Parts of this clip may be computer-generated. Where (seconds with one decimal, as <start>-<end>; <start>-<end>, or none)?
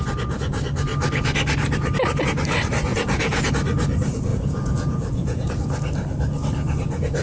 2.9-3.5; 4.3-5.5